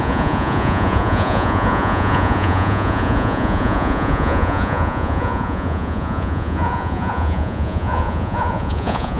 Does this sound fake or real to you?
fake